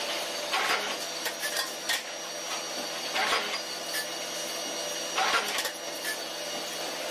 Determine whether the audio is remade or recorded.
recorded